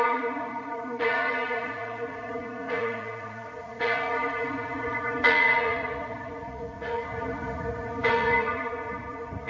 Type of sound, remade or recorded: remade